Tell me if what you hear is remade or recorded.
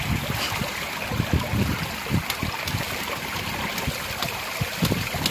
recorded